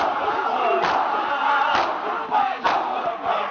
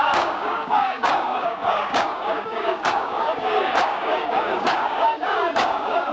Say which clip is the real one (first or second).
first